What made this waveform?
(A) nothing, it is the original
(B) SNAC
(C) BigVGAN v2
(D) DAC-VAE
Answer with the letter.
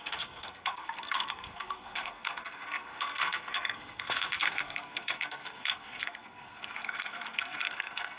B